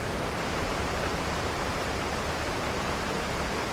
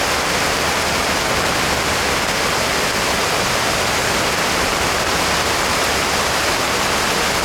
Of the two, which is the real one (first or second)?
second